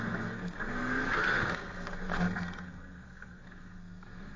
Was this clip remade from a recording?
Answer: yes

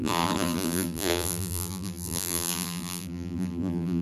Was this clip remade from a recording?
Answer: yes